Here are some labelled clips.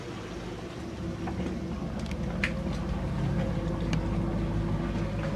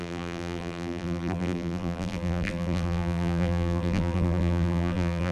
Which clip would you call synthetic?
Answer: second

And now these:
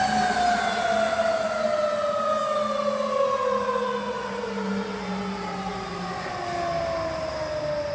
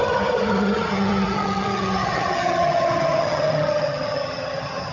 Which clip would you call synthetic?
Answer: second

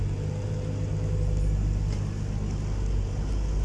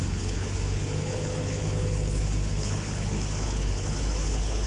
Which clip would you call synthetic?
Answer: second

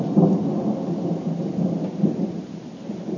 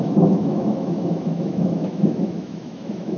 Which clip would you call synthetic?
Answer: second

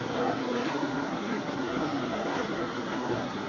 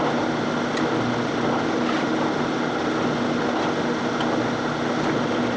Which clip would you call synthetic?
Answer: first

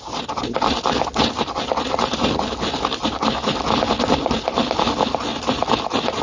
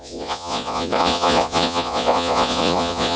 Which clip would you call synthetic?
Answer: second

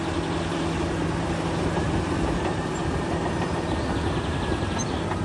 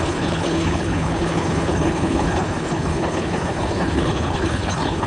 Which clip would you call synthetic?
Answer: second